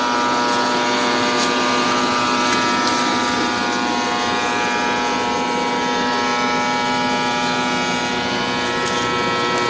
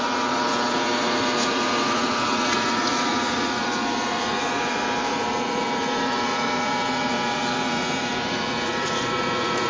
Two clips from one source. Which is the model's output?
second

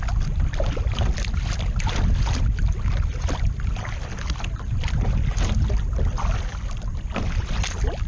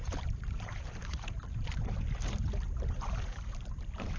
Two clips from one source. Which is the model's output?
second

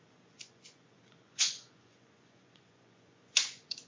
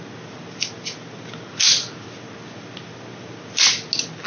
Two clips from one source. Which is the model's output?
first